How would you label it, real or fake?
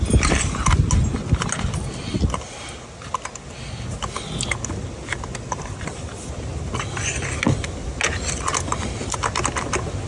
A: real